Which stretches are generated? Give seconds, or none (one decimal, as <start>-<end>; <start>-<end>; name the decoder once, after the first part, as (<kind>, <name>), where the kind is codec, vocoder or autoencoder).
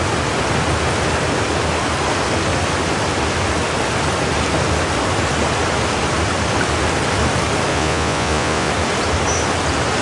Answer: 7.7-8.7 (vocoder, Vocos)